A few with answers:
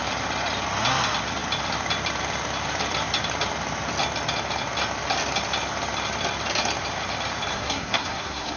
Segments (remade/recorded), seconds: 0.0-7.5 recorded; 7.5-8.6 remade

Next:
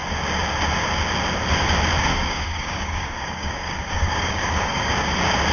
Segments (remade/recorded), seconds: 0.0-2.1 recorded; 2.1-4.9 remade; 4.9-5.5 recorded

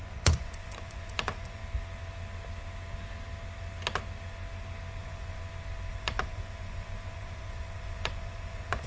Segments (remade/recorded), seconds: 0.0-1.6 remade; 1.6-5.0 recorded; 5.0-5.4 remade; 5.4-5.9 recorded; 5.9-8.9 remade

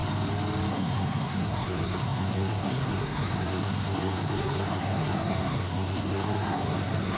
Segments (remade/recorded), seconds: 0.0-0.7 recorded; 0.7-7.2 remade

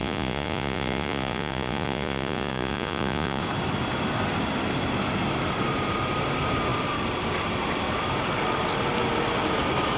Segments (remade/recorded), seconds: 0.0-3.4 remade; 3.4-10.0 recorded

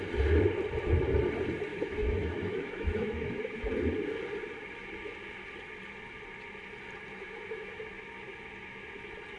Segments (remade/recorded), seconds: 0.0-1.7 recorded; 1.7-3.7 remade; 3.7-7.1 recorded; 7.1-7.8 remade; 7.8-9.4 recorded